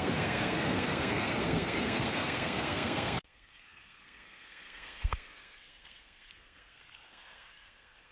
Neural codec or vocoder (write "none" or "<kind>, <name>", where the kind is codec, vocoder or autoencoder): codec, SNAC